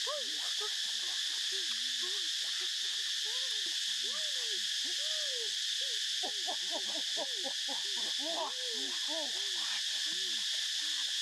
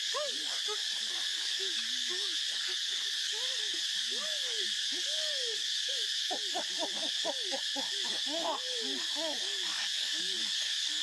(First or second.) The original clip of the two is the first